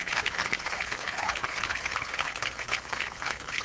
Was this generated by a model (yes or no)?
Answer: yes